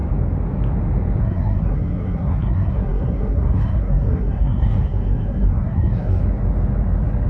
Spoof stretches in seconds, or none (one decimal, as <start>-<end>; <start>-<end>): 1.2-6.2